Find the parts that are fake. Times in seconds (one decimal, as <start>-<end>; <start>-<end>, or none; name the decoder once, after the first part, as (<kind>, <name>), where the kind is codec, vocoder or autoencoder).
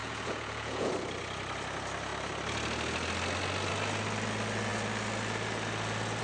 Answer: 0.0-0.9 (vocoder, Vocos)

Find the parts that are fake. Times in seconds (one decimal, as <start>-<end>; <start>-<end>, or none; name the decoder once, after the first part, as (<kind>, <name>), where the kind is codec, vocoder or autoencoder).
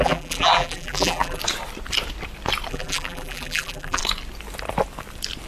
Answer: 0.0-1.4 (vocoder, BigVGAN v2); 2.7-4.0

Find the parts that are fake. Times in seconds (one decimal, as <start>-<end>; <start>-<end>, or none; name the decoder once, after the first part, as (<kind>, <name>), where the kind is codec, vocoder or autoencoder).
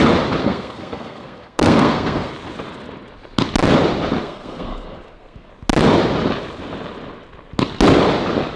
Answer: 0.4-2.3 (codec, SNAC); 4.2-5.5